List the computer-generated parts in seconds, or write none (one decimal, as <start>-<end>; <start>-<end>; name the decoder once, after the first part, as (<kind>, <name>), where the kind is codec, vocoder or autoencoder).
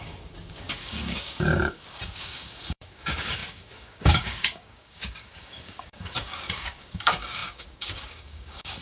0.0-8.8 (codec, DAC)